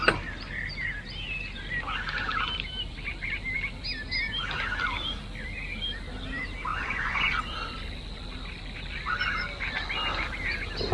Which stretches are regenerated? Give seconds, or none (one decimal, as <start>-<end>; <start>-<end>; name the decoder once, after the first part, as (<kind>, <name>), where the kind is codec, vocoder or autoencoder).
6.7-7.4 (vocoder, Vocos)